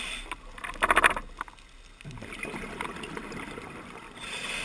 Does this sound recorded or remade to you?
recorded